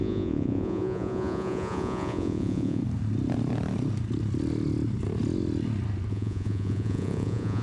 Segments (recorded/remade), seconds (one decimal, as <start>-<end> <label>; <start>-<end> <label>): 0.0-2.8 remade; 2.8-6.1 recorded; 6.1-7.6 remade